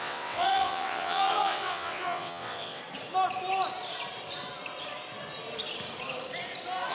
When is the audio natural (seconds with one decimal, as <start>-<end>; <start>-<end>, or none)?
2.8-6.9